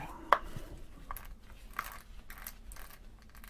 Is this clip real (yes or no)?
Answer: yes